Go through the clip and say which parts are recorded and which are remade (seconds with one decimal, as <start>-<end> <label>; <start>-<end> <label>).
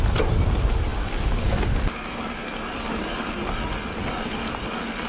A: 0.0-5.1 recorded